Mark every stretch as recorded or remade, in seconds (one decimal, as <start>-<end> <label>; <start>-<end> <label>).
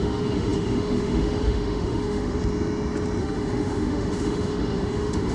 0.0-2.4 remade; 2.4-3.2 recorded; 3.2-5.3 remade